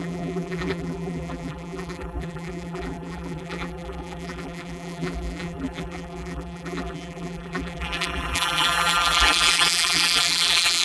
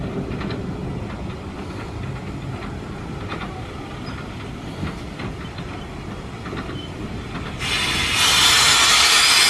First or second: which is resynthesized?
first